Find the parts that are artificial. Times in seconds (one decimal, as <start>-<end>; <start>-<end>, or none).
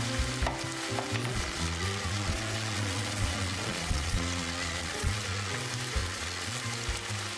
1.2-5.6; 6.0-6.6